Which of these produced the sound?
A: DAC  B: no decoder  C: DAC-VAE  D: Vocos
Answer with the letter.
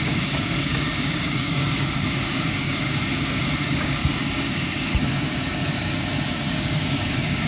A